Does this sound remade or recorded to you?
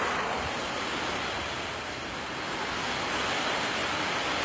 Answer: recorded